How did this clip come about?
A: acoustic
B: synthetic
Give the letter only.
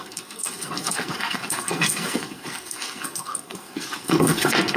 B